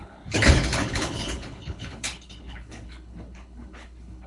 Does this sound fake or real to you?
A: fake